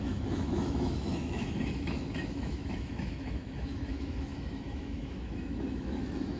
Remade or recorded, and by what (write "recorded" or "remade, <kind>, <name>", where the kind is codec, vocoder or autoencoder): remade, autoencoder, DAC-VAE